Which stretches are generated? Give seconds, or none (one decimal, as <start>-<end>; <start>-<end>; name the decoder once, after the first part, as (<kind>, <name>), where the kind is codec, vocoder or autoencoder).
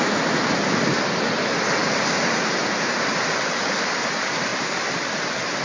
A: none